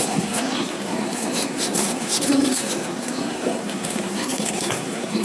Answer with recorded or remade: remade